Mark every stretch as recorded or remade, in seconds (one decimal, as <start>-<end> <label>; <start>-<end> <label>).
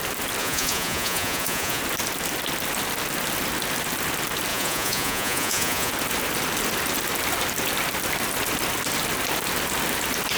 0.0-0.4 recorded; 0.4-1.8 remade; 1.8-4.5 recorded; 4.5-5.9 remade; 5.9-10.4 recorded